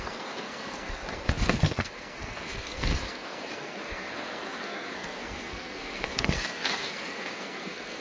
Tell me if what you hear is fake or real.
fake